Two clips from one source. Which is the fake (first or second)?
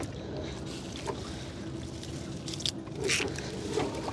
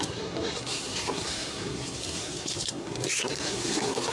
second